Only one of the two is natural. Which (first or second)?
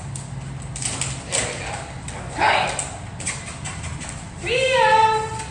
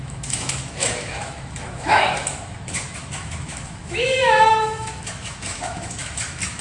first